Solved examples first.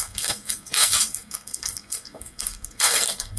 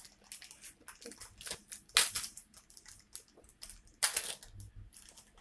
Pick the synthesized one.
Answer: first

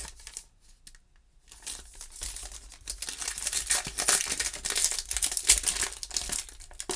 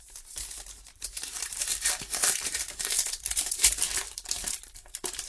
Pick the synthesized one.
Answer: second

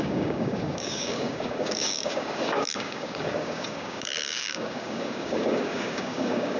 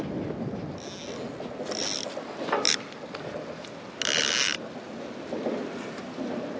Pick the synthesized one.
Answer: first